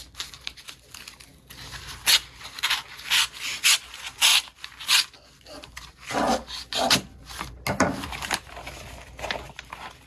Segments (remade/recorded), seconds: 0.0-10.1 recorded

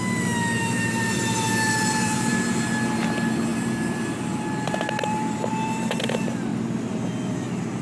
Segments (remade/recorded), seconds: 0.0-0.6 recorded; 0.6-2.5 remade; 2.5-3.5 recorded; 3.5-5.5 remade; 5.5-6.5 recorded; 6.5-7.8 remade

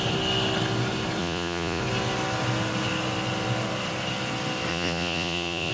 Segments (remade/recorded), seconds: 0.0-1.2 recorded; 1.2-1.8 remade; 1.8-4.7 recorded; 4.7-5.7 remade

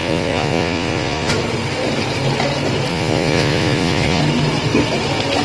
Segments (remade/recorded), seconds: 0.0-1.3 remade; 1.3-2.9 recorded; 2.9-4.2 remade; 4.2-5.4 recorded

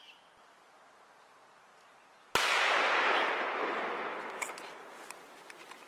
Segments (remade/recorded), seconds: 0.0-5.9 recorded